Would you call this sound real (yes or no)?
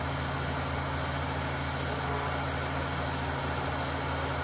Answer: yes